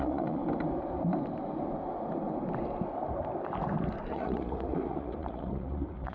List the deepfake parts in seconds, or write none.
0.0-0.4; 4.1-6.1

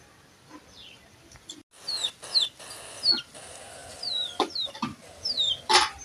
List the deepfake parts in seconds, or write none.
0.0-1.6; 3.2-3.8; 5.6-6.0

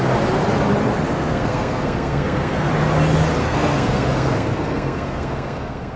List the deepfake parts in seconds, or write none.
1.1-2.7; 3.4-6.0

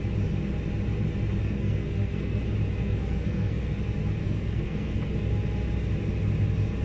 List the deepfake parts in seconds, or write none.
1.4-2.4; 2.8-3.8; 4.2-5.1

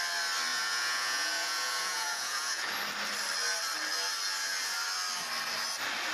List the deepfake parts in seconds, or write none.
0.5-2.7